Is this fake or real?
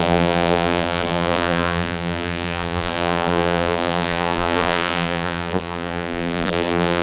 fake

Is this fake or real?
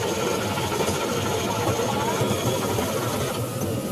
real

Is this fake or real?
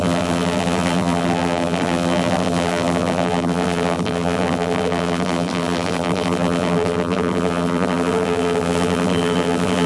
fake